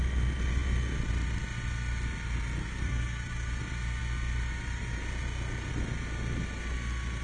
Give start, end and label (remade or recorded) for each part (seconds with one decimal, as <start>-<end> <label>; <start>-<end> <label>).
0.0-2.6 recorded; 2.6-3.6 remade; 3.6-7.2 recorded